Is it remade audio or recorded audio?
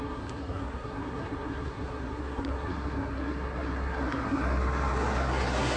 remade